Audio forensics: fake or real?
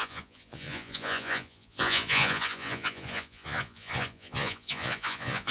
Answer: fake